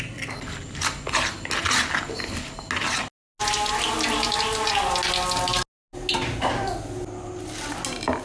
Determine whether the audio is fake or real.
real